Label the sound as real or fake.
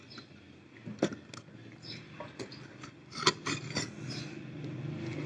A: real